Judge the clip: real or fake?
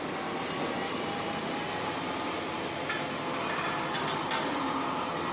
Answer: real